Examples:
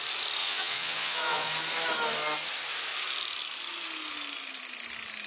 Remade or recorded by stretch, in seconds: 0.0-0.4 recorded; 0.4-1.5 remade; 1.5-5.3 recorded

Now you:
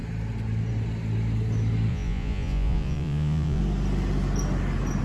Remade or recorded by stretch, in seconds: 0.0-1.9 recorded; 1.9-3.6 remade; 3.6-5.0 recorded

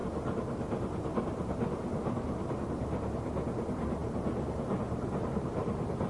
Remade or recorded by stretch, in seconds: 0.0-6.1 recorded

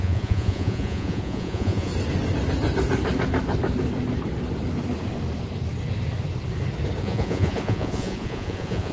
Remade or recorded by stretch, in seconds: 0.0-1.9 remade; 1.9-7.0 recorded; 7.0-8.9 remade

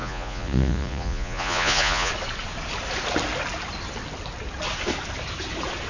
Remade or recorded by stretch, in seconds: 0.0-2.1 remade; 2.1-5.9 recorded

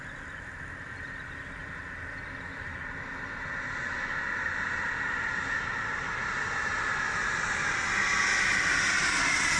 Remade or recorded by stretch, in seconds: 0.0-9.6 recorded

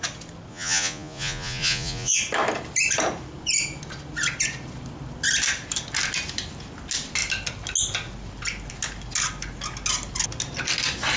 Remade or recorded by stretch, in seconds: 0.0-0.5 recorded; 0.5-2.2 remade; 2.2-11.2 recorded

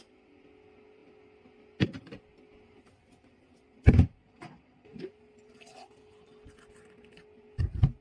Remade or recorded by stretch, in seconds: 0.0-4.2 recorded; 4.2-5.0 remade; 5.0-8.0 recorded